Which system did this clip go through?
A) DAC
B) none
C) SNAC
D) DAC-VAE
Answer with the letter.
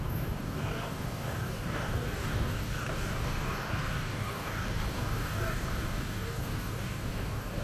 A